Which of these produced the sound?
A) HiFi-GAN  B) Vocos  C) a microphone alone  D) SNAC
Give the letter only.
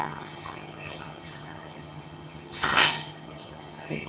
A